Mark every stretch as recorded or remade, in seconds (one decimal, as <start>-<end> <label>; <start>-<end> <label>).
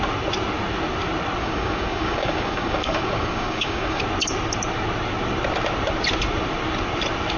0.0-1.4 recorded; 1.4-4.0 remade; 4.0-7.4 recorded